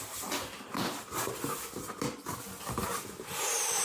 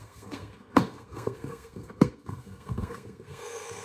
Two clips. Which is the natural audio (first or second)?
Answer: first